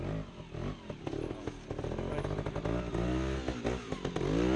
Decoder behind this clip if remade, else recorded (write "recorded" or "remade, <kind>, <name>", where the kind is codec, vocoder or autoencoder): recorded